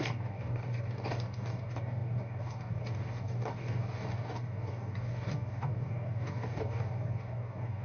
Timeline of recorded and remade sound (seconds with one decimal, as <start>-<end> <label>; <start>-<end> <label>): 0.0-7.8 remade